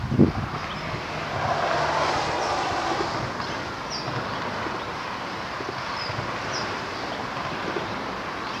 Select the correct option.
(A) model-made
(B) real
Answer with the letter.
B